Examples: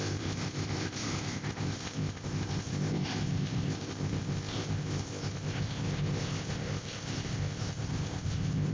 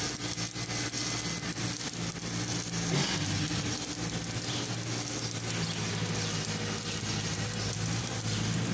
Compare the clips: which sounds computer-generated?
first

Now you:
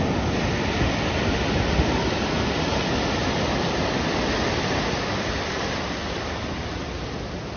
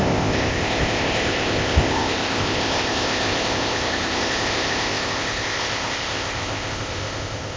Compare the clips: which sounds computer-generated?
second